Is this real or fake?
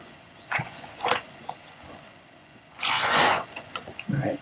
fake